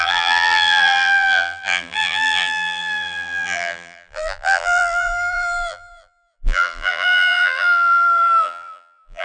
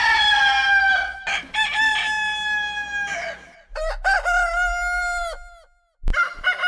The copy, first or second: first